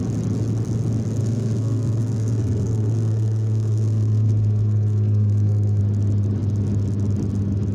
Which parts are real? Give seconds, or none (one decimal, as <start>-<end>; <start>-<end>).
0.0-1.2; 5.8-7.7